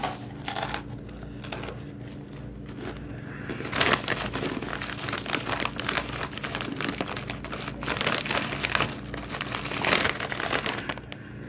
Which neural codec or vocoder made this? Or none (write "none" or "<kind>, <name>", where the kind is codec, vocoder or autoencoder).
none